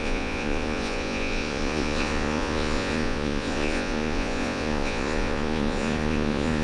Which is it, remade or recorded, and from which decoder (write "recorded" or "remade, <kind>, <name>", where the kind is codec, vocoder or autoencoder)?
remade, vocoder, Vocos